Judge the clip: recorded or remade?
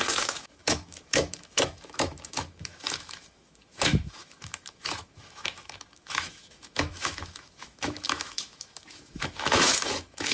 remade